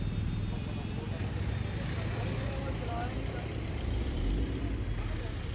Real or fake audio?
real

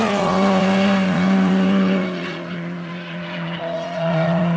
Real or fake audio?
fake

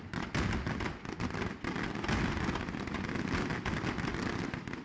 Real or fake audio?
real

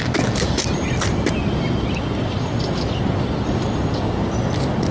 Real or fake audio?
real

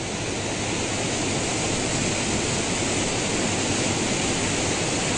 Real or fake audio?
real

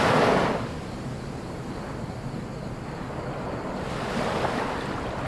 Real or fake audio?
real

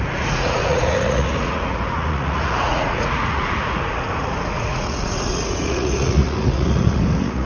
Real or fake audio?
fake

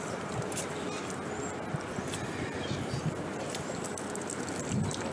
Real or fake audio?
real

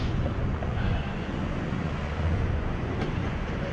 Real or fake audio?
fake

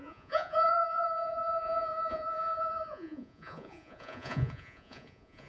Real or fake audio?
fake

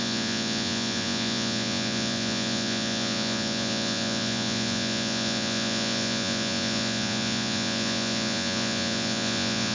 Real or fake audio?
fake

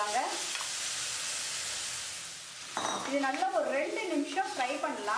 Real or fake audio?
real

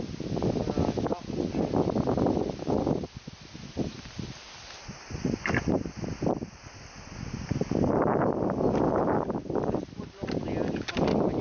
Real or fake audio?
real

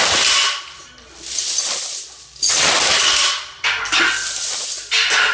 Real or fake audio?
real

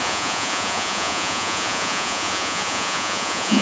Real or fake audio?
fake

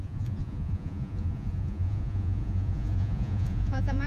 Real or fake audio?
fake